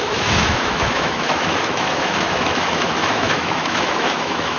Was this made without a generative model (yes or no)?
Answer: no